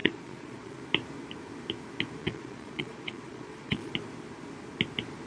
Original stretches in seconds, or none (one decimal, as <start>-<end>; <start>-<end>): 0.8-2.2; 3.9-5.3